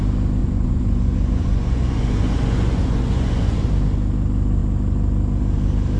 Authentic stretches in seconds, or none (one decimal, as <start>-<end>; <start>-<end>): 0.0-0.4; 3.7-6.0